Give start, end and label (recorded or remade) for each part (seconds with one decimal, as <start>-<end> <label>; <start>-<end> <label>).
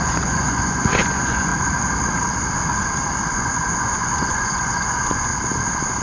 0.0-1.5 remade; 1.5-3.3 recorded; 3.3-5.3 remade; 5.3-6.0 recorded